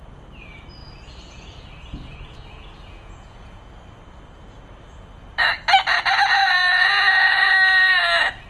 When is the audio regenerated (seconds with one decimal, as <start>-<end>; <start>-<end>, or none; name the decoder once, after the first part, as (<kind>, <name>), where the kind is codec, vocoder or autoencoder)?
0.8-3.6 (vocoder, Vocos); 6.1-7.5